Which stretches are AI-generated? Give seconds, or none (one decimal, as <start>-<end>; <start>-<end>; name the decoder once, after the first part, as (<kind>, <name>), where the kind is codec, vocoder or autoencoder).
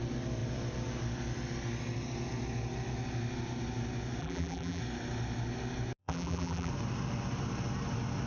4.2-4.8 (vocoder, BigVGAN v2); 6.0-6.7